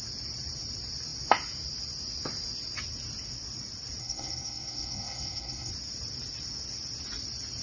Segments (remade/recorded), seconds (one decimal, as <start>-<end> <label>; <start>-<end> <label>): 0.0-4.0 recorded; 4.0-5.7 remade; 5.7-7.6 recorded